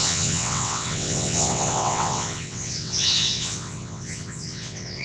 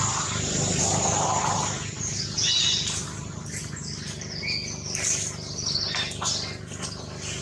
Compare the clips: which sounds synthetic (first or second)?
first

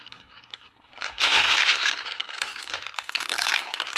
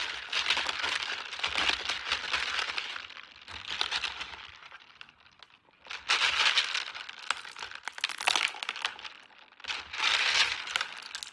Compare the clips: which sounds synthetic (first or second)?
first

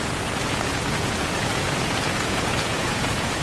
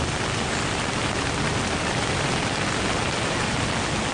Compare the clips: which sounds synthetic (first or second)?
first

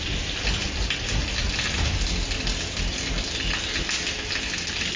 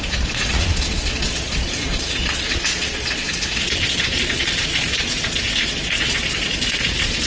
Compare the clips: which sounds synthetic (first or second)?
second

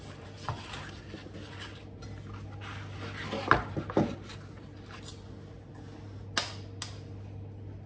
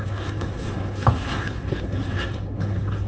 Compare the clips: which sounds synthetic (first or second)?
second